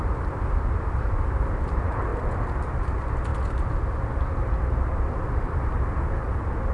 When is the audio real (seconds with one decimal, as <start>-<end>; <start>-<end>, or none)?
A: 2.1-2.6; 3.3-5.8